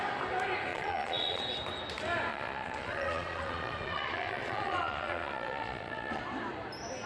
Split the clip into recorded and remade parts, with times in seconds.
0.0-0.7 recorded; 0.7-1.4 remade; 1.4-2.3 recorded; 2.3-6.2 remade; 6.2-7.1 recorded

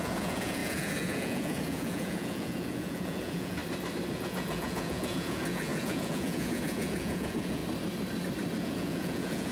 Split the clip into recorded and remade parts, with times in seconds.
0.0-3.6 remade; 3.6-4.1 recorded; 4.1-7.6 remade; 7.6-8.6 recorded; 8.6-9.5 remade

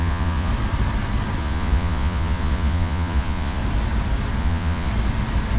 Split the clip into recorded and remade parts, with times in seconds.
0.0-0.5 remade; 0.5-1.4 recorded; 1.4-3.6 remade; 3.6-4.4 recorded; 4.4-4.9 remade; 4.9-5.6 recorded